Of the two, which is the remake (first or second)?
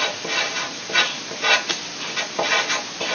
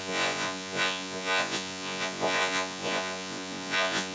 second